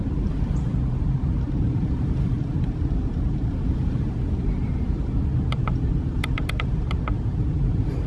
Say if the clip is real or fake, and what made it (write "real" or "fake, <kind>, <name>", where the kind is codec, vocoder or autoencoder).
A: fake, vocoder, BigVGAN v2